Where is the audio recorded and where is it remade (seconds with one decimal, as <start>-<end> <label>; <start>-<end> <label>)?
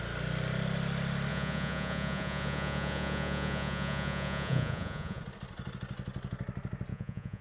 0.0-1.3 recorded; 1.3-5.2 remade; 5.2-6.9 recorded; 6.9-7.4 remade